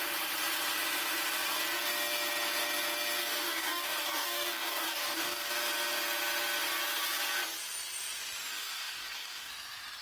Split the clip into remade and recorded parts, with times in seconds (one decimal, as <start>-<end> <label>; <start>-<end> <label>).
0.0-3.2 recorded; 3.2-5.5 remade; 5.5-8.5 recorded; 8.5-9.5 remade; 9.5-10.0 recorded